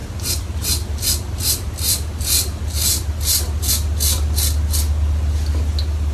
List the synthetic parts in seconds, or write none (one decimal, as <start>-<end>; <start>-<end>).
none